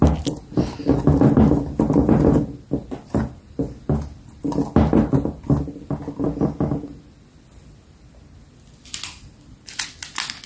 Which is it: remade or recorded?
recorded